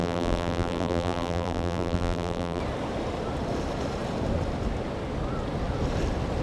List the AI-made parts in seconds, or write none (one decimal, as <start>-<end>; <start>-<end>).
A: 0.0-2.6